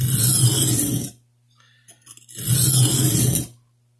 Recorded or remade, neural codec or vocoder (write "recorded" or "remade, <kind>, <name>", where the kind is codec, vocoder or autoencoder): recorded